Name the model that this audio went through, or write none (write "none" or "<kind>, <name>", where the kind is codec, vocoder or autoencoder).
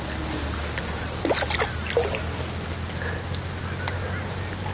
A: none